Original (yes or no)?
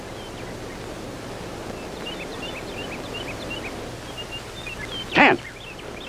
yes